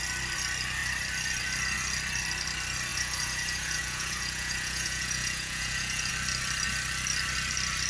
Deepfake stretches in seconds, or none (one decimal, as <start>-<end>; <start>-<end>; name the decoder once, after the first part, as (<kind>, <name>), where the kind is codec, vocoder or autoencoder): 2.9-6.1 (vocoder, Vocos)